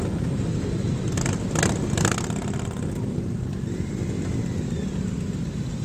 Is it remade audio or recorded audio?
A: recorded